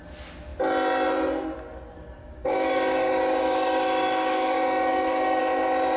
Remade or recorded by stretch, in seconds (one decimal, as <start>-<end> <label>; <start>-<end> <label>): 0.0-2.2 recorded; 2.2-5.4 remade; 5.4-6.0 recorded